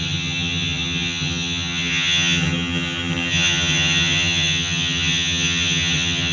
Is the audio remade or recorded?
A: remade